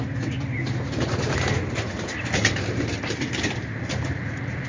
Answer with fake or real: fake